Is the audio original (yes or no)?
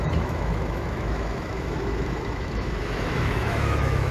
no